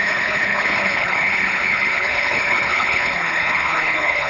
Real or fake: fake